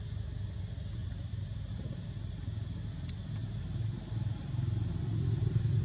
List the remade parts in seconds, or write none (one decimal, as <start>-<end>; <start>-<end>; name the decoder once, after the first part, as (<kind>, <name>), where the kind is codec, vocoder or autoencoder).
1.0-2.2 (vocoder, BigVGAN v2); 3.4-5.0